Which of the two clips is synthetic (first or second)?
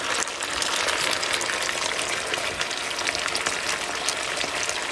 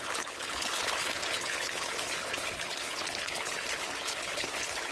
second